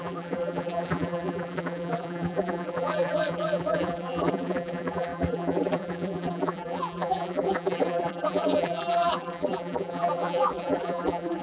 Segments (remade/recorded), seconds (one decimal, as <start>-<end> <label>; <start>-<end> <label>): 0.0-11.4 remade

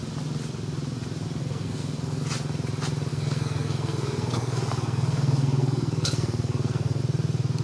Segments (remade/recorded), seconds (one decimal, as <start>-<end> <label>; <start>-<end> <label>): 0.0-1.4 recorded; 1.4-2.2 remade; 2.2-3.1 recorded; 3.1-7.0 remade; 7.0-7.6 recorded

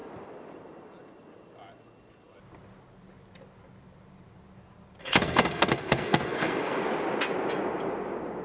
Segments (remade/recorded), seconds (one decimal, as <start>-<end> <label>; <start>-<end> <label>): 0.0-5.0 recorded; 5.0-6.8 remade; 6.8-8.4 recorded

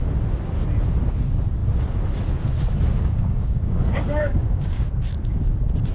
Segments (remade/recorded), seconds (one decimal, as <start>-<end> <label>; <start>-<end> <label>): 0.0-2.9 recorded; 2.9-4.9 remade; 4.9-5.9 recorded

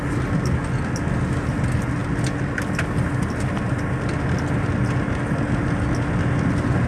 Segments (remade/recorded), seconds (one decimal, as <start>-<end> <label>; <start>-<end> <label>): 0.0-6.9 recorded